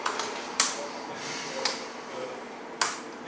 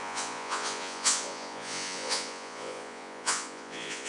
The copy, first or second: second